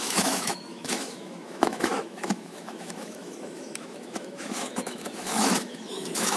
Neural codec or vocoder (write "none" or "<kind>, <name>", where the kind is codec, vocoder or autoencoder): autoencoder, DAC-VAE